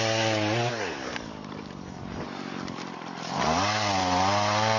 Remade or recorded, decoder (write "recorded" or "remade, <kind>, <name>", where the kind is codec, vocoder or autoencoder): recorded